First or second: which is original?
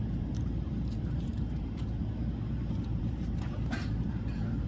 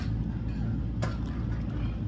second